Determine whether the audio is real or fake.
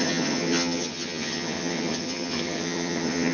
fake